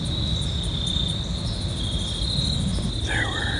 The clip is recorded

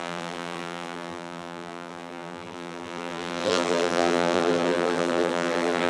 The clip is remade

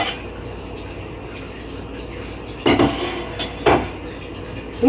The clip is recorded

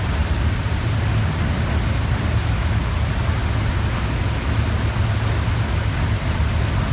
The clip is recorded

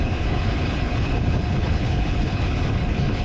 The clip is remade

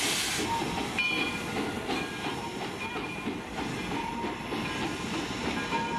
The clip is recorded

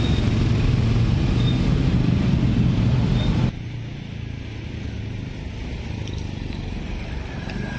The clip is recorded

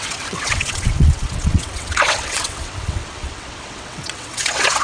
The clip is remade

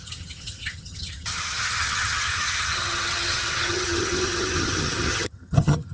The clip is remade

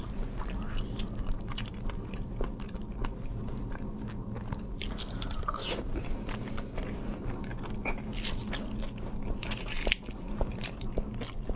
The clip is recorded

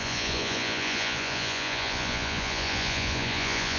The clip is remade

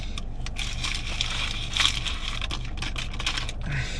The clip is recorded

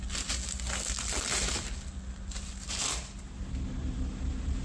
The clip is recorded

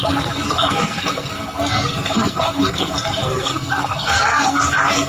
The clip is remade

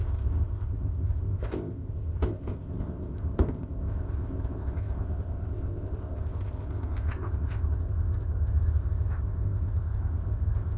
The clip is remade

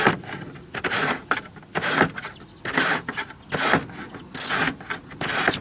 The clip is recorded